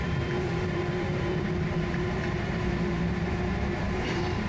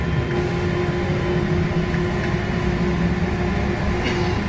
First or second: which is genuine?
second